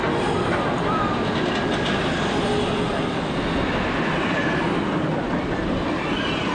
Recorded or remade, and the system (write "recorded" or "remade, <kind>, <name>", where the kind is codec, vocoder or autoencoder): recorded